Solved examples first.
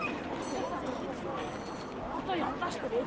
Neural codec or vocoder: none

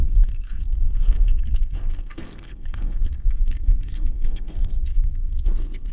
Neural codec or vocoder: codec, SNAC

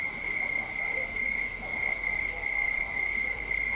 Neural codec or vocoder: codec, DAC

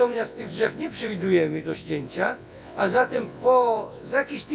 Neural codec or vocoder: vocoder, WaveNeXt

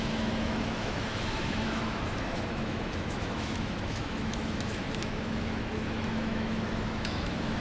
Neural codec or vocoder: autoencoder, DAC-VAE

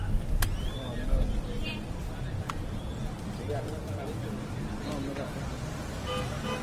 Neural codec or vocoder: none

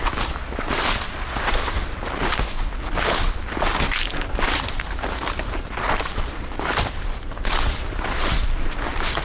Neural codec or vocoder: none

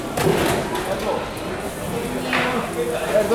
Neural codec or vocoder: none